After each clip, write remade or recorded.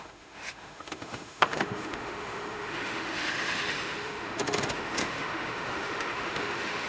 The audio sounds remade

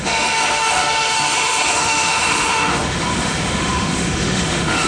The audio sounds remade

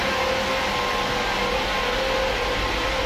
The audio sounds recorded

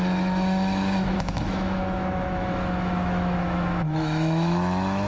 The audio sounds remade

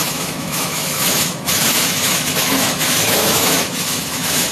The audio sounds remade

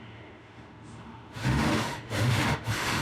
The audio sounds remade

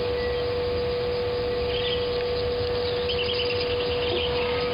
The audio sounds recorded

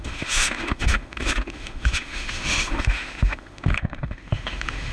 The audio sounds remade